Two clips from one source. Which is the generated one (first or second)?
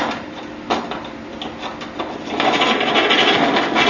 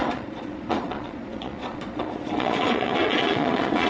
second